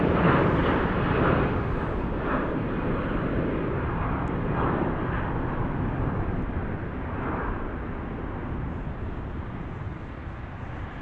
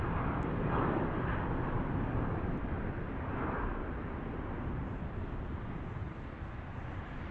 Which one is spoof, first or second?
second